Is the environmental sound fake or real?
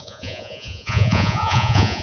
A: fake